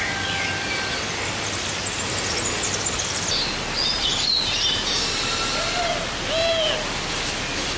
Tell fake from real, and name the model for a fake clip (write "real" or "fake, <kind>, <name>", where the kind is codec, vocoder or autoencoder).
real